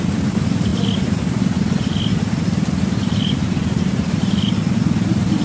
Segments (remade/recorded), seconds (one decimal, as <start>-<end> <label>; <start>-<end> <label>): 0.0-5.4 recorded